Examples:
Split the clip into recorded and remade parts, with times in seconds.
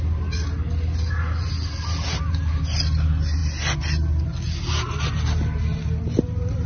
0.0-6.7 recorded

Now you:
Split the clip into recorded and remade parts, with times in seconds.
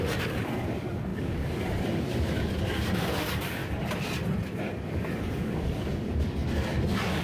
0.0-3.6 remade; 3.6-4.6 recorded; 4.6-7.2 remade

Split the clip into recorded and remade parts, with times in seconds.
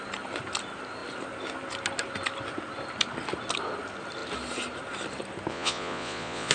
0.0-5.5 recorded; 5.5-6.5 remade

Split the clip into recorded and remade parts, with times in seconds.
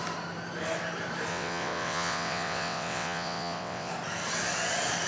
0.0-1.3 recorded; 1.3-3.9 remade; 3.9-5.1 recorded